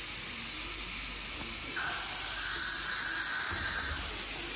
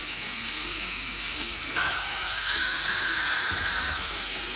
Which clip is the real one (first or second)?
first